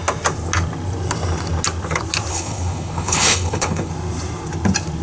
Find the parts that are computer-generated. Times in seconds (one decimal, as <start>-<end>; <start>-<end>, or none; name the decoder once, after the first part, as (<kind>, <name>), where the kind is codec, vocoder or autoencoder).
2.3-3.9 (codec, HILCodec)